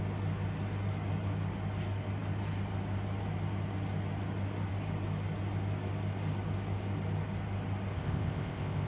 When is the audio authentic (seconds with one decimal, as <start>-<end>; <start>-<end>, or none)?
0.0-7.9